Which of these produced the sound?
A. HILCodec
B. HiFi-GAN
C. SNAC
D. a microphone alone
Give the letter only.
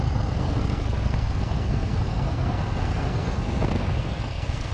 C